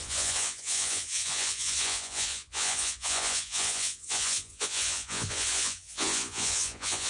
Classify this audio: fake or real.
fake